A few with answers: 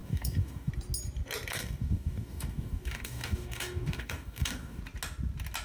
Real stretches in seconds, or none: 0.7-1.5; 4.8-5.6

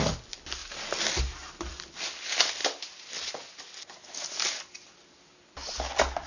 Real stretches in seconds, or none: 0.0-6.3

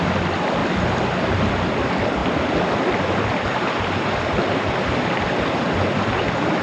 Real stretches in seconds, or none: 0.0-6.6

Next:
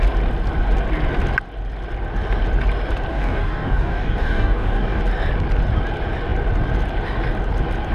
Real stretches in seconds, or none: 0.0-3.1; 5.0-7.9

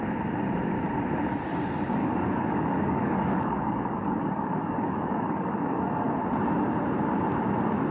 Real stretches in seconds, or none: 0.0-2.0; 6.1-7.9